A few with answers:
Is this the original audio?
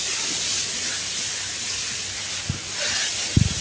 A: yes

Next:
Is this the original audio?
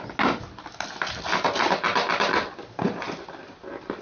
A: yes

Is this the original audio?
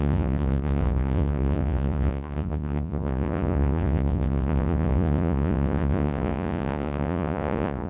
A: no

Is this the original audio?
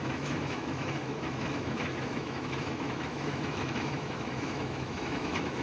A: no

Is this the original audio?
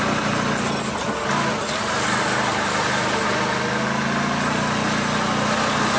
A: yes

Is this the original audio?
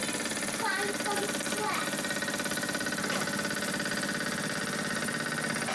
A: yes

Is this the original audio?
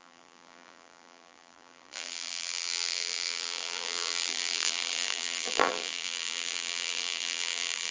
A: no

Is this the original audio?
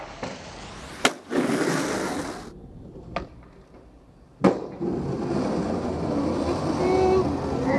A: yes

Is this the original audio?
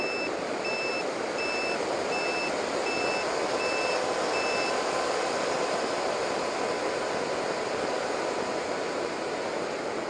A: yes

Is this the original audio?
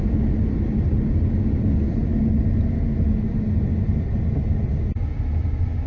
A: yes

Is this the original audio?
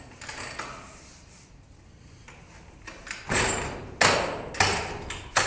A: yes